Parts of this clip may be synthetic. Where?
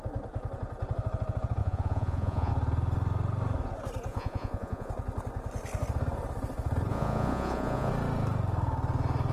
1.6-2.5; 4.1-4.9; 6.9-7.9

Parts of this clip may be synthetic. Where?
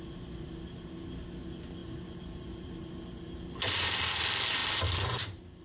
none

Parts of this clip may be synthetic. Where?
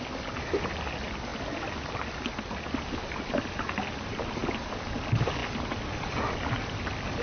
none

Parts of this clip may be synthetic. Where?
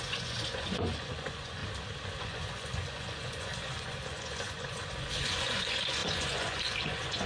0.0-1.6; 2.2-7.3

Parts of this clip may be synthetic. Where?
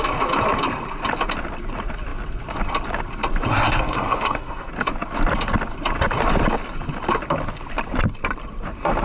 3.5-4.7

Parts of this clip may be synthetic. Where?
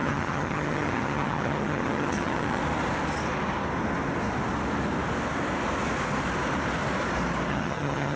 0.0-2.6; 7.5-8.2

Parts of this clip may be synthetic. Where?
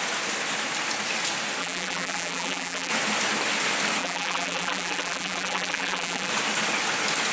1.6-2.9; 4.0-6.3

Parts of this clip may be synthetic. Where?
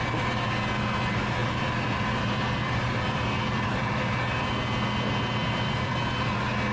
1.4-4.5; 5.4-5.9